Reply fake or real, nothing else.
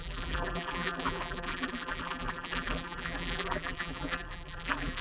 fake